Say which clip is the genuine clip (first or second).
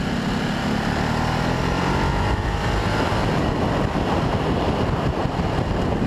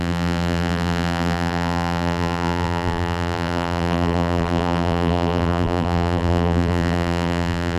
first